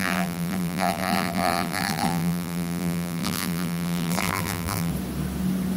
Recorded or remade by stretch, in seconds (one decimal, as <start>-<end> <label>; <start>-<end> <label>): 0.0-4.9 remade; 4.9-5.8 recorded